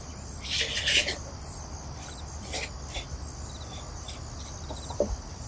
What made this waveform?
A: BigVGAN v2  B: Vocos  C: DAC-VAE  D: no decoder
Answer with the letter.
D